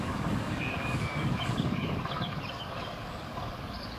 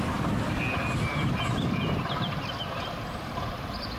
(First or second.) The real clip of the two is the second